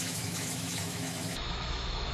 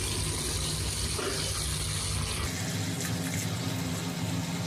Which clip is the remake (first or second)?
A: first